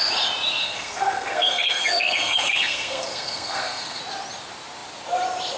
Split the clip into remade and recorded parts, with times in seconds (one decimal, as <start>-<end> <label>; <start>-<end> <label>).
0.0-0.6 recorded; 0.6-4.0 remade; 4.0-5.6 recorded